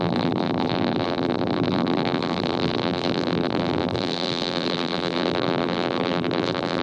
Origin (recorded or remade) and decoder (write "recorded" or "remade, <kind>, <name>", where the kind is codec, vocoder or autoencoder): remade, vocoder, BigVGAN v2